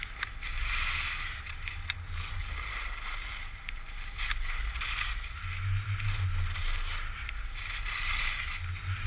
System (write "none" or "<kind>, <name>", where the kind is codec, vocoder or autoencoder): none